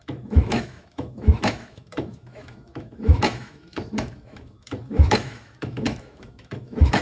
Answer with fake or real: fake